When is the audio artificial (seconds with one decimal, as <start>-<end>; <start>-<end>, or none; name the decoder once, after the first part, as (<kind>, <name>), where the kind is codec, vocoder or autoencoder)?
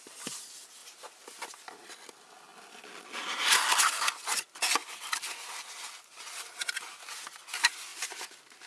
0.8-1.9 (vocoder, BigVGAN v2); 4.8-5.8; 7.9-8.7